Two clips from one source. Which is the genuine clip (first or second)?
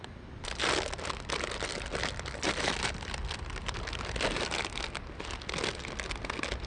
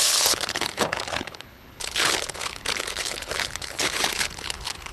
first